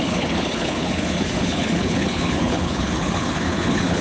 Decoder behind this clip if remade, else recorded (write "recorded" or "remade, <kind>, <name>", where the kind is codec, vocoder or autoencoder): remade, codec, HILCodec